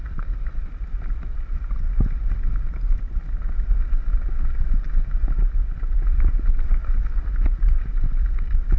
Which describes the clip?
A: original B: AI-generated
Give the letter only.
A